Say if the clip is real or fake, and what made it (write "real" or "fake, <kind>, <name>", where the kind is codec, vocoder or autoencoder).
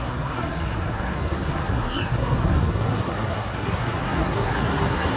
fake, codec, SNAC